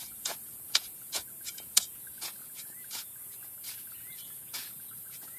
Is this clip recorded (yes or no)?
no